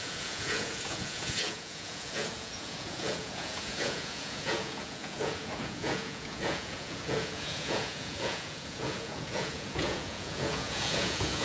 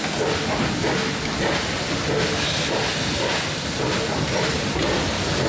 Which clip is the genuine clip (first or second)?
second